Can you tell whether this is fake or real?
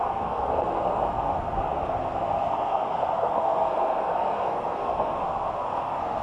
fake